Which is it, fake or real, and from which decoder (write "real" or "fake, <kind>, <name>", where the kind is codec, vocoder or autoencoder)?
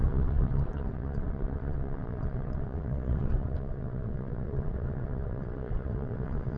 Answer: fake, vocoder, WaveNeXt